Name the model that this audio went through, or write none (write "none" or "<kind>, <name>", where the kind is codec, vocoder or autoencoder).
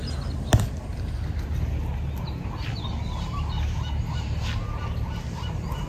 none